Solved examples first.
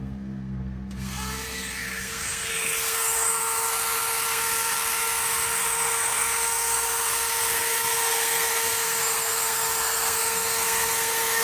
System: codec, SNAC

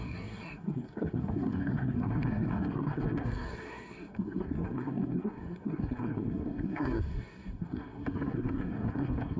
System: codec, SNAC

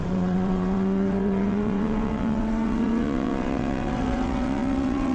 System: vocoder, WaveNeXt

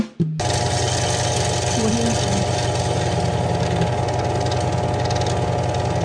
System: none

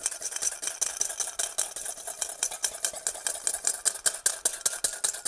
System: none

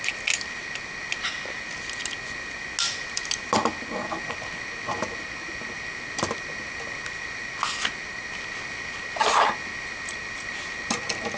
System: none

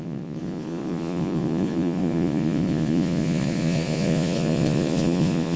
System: vocoder, Vocos